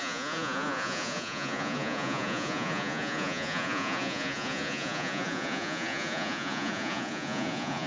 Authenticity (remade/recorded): remade